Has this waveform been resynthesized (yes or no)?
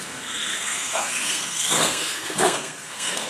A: yes